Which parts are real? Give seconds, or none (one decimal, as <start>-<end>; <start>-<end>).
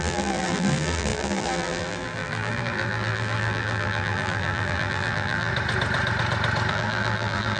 5.5-6.7